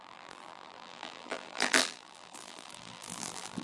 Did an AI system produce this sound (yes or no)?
yes